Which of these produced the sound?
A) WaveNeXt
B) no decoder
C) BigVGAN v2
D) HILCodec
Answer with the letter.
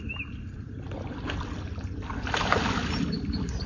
B